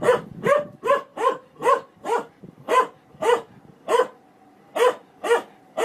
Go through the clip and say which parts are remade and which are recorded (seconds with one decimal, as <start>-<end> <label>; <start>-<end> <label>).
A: 0.0-1.1 recorded; 1.1-4.6 remade; 4.6-5.8 recorded